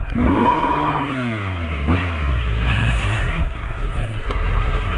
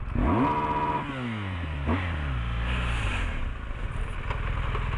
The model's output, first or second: first